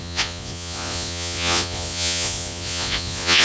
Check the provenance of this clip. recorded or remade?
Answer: remade